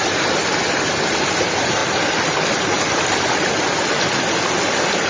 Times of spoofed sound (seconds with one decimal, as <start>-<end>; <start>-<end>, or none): none